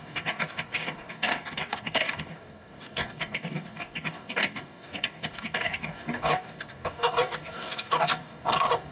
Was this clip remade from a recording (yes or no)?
yes